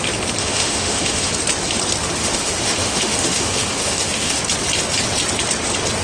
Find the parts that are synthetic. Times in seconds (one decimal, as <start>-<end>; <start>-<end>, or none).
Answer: 0.4-1.3; 2.2-4.4